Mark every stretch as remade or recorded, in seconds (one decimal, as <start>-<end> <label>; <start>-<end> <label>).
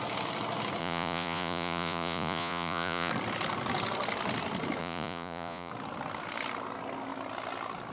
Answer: 0.0-0.8 recorded; 0.8-3.1 remade; 3.1-4.8 recorded; 4.8-5.7 remade; 5.7-7.9 recorded